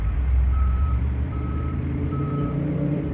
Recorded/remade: remade